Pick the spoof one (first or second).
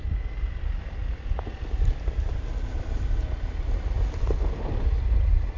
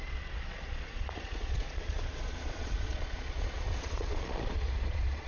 second